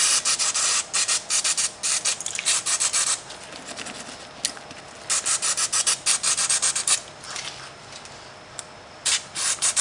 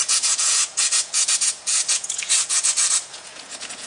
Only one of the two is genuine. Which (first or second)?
first